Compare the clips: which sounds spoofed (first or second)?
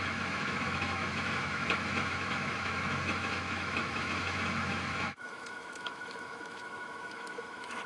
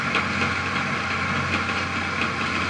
first